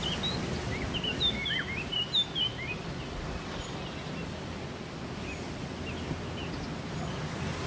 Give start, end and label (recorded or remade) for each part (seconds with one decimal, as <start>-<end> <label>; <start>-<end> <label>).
0.0-7.7 recorded